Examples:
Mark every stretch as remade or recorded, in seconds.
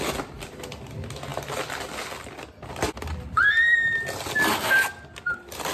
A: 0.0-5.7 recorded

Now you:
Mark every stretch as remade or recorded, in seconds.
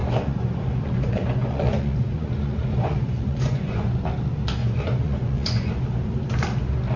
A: 0.0-4.0 remade; 4.0-4.6 recorded; 4.6-5.7 remade; 5.7-7.0 recorded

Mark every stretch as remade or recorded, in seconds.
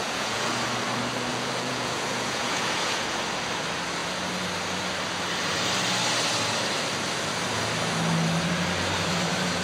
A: 0.0-0.5 remade; 0.5-1.3 recorded; 1.3-3.0 remade; 3.0-9.6 recorded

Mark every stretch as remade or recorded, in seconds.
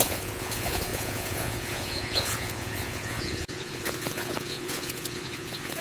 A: 0.0-5.8 remade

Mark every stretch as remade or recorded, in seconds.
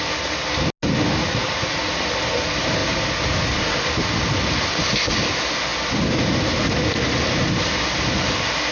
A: 0.0-1.2 recorded; 1.2-2.0 remade; 2.0-8.7 recorded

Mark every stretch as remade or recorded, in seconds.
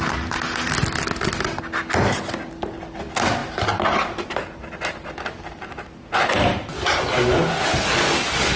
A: 0.0-8.6 recorded